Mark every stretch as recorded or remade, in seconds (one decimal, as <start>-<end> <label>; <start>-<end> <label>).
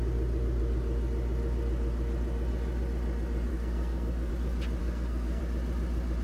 0.0-3.5 recorded; 3.5-4.3 remade; 4.3-4.8 recorded; 4.8-5.4 remade; 5.4-6.2 recorded